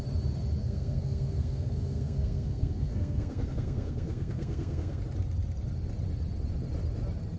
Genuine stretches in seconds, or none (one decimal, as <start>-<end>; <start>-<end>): 0.0-0.6; 5.0-7.4